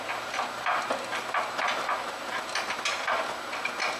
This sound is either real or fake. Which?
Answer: real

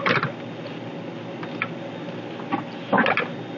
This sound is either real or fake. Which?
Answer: real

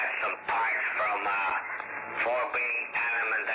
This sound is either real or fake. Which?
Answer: real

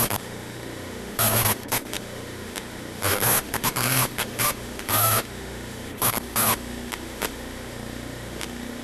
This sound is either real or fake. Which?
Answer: fake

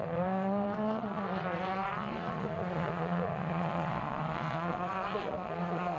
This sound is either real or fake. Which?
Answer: fake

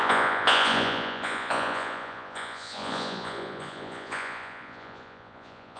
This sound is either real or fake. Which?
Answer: fake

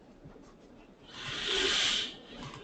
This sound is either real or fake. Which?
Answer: fake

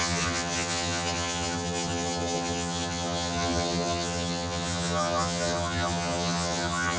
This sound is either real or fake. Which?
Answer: fake